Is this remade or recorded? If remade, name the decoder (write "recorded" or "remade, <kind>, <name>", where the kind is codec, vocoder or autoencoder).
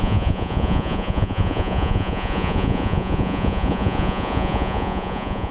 remade, vocoder, Vocos